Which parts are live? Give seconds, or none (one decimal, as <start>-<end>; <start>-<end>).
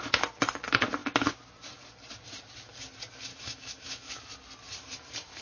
0.0-3.3; 4.1-5.4